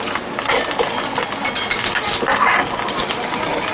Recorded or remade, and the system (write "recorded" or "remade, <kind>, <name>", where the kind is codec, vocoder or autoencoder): recorded